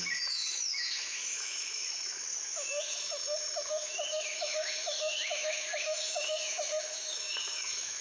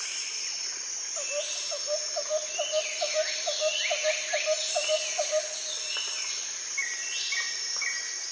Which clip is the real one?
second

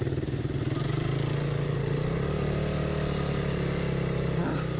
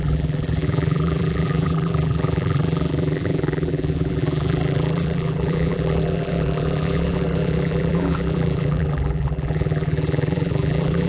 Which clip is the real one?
first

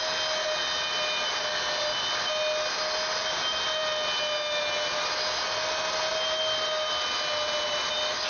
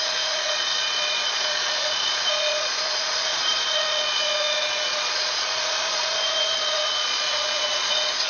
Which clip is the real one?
first